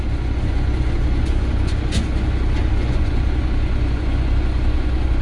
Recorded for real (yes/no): no